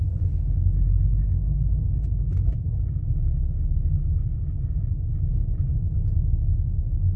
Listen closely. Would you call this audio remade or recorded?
recorded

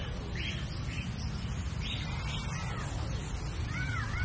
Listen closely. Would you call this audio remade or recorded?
recorded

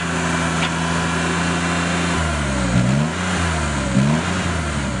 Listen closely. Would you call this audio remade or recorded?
recorded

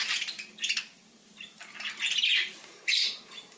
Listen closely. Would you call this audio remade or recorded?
recorded